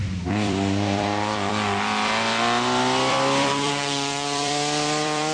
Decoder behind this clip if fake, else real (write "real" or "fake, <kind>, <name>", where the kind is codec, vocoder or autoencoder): fake, vocoder, BigVGAN v2